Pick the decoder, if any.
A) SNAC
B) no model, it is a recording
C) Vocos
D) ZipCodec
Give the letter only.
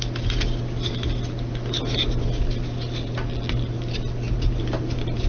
B